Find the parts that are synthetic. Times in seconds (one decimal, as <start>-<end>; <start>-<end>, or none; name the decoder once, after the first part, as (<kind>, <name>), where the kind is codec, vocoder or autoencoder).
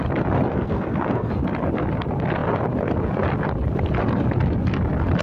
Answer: 0.5-1.3 (codec, SNAC)